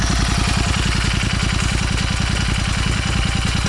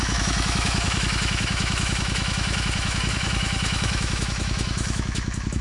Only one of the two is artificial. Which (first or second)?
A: second